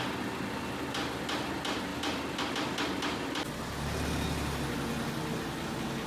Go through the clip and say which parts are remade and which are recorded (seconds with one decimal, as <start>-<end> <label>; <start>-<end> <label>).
0.0-6.1 recorded